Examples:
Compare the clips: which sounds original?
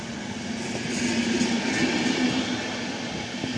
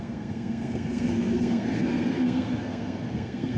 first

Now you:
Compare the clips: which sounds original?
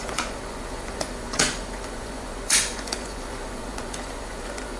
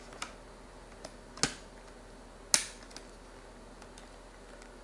second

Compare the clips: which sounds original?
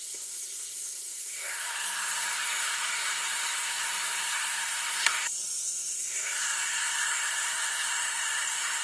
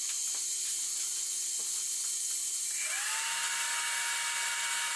second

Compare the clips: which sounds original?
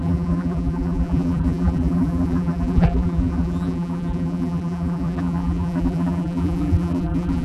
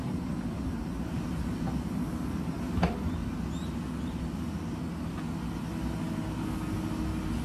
second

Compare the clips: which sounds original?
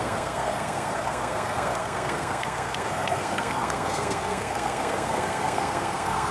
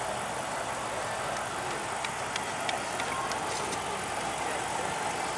second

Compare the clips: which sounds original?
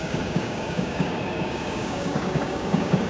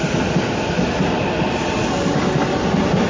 second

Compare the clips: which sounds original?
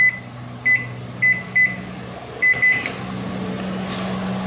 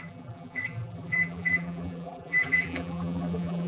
first